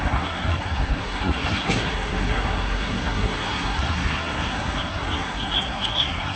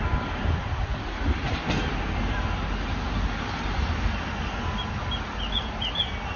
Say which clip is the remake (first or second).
first